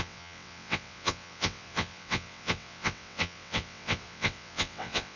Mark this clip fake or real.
fake